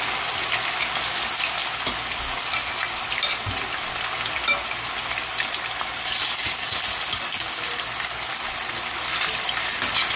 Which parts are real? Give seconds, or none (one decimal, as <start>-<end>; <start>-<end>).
0.0-10.2